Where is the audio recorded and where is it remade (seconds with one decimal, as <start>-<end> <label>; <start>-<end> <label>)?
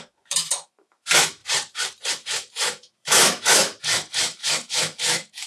0.0-1.4 remade; 1.4-2.1 recorded; 2.1-5.5 remade